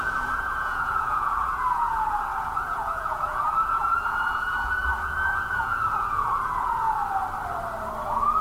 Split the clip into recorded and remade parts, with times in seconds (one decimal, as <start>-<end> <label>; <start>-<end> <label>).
0.0-7.0 remade; 7.0-8.0 recorded; 8.0-8.4 remade